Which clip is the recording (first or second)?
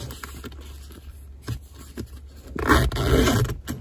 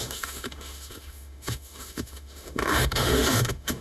first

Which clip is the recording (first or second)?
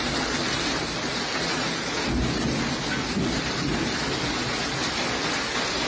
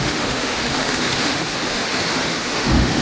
first